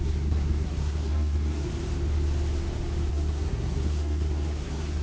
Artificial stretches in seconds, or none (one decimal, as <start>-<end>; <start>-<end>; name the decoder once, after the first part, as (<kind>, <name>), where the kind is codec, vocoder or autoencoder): 0.0-1.7 (codec, SNAC); 3.1-5.0